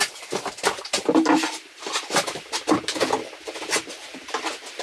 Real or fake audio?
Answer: real